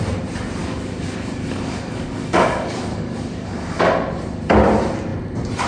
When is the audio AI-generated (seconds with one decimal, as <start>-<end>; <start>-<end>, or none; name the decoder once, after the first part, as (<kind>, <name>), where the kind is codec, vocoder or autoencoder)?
0.6-3.8 (codec, DAC)